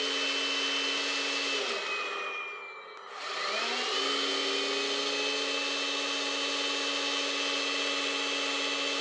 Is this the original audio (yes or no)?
yes